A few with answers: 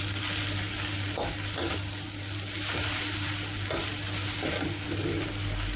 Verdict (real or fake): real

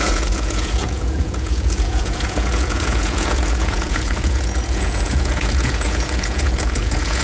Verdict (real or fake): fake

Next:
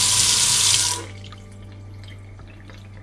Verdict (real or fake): real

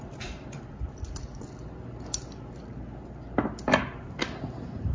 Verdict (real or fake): real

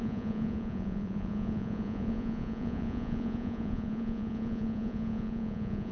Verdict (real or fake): fake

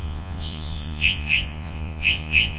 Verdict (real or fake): fake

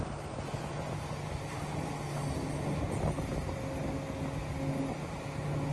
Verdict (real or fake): real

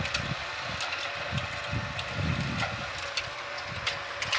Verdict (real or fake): real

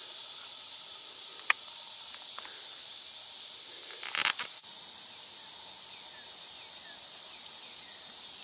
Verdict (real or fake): real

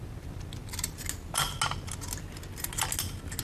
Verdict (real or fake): real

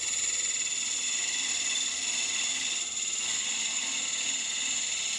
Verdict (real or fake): real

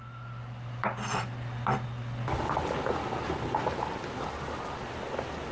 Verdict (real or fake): real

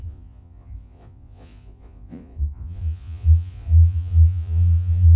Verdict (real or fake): fake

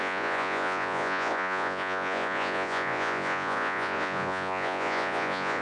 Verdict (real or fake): fake